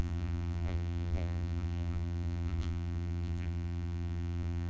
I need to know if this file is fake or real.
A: fake